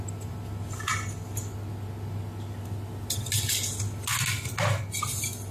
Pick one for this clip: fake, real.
real